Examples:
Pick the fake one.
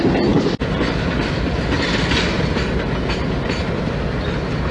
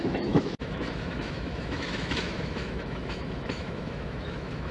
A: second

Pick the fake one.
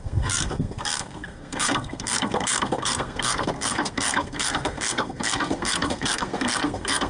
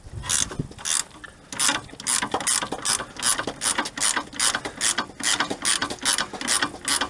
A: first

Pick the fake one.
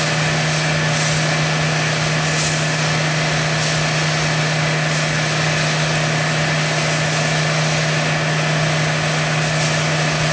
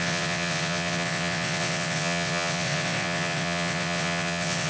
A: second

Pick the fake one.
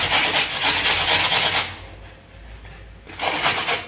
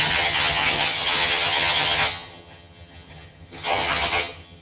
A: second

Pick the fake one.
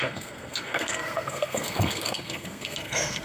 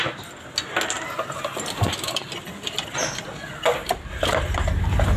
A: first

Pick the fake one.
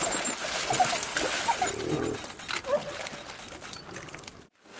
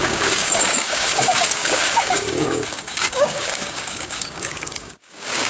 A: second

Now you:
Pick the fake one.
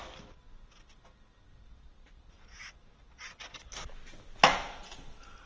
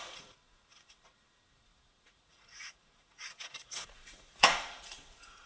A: second